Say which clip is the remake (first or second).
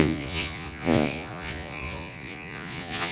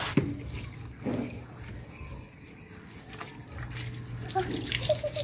first